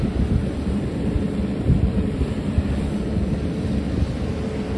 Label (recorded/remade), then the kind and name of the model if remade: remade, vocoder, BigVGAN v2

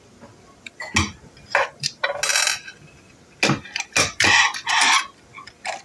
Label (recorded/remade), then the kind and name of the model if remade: recorded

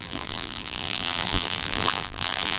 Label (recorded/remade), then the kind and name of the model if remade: remade, vocoder, BigVGAN v2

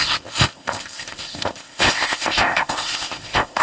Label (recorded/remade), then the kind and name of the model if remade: remade, codec, ZipCodec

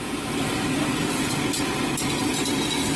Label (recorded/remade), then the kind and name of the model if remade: remade, vocoder, BigVGAN v2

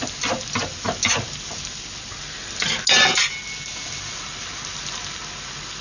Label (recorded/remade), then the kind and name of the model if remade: recorded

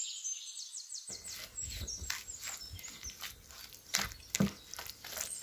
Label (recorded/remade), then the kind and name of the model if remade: recorded